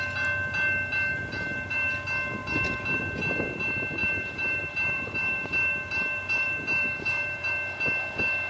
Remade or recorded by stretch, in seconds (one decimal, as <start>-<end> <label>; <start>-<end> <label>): 0.0-1.1 recorded; 1.1-1.9 remade; 1.9-2.4 recorded; 2.4-3.0 remade; 3.0-4.0 recorded; 4.0-7.5 remade; 7.5-8.5 recorded